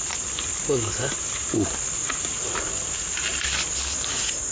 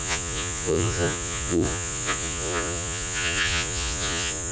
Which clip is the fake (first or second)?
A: second